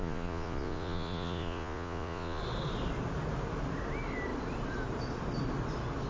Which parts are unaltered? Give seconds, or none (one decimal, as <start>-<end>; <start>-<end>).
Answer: 2.4-6.1